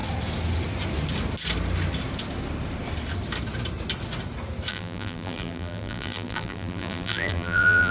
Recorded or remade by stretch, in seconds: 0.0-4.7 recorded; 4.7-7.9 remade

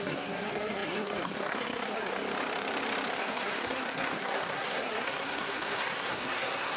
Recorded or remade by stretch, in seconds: 0.0-2.1 remade; 2.1-3.2 recorded; 3.2-6.8 remade

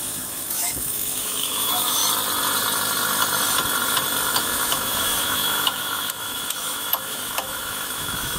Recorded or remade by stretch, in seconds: 0.0-2.0 remade; 2.0-4.4 recorded; 4.4-8.4 remade

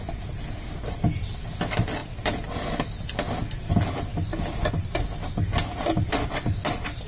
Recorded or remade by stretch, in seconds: 0.0-2.0 recorded; 2.0-2.6 remade; 2.6-7.1 recorded

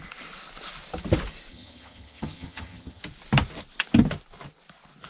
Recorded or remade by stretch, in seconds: 0.0-1.5 recorded; 1.5-3.0 remade; 3.0-5.1 recorded